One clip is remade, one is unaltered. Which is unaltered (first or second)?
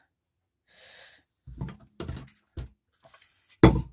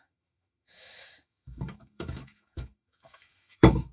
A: first